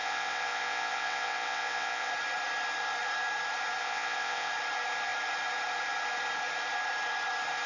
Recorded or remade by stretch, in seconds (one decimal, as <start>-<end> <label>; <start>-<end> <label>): 0.0-2.1 remade; 2.1-3.8 recorded; 3.8-4.5 remade; 4.5-7.7 recorded